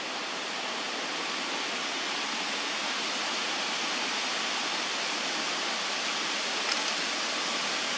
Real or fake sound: real